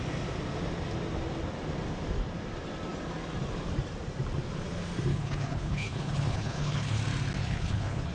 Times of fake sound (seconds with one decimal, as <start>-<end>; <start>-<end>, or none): 5.1-7.0; 7.4-8.1